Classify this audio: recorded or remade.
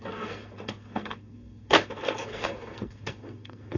remade